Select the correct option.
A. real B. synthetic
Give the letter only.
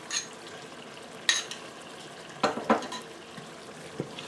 A